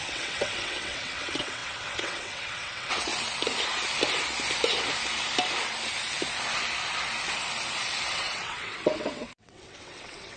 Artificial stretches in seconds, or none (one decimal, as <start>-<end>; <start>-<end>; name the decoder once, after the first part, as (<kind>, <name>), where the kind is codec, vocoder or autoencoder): 0.0-3.1 (vocoder, WaveNeXt); 8.1-10.4